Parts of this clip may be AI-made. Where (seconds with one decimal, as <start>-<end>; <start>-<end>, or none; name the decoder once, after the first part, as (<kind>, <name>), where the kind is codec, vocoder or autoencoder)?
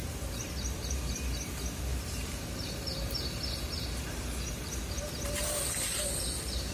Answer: 0.0-1.5 (vocoder, BigVGAN v2); 1.9-5.1